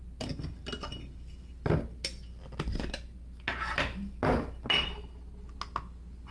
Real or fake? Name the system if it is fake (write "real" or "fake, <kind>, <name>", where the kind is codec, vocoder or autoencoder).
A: real